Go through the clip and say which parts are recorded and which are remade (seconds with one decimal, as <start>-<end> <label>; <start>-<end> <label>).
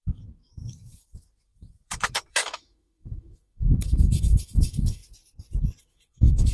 0.0-5.0 remade; 5.0-5.8 recorded; 5.8-6.5 remade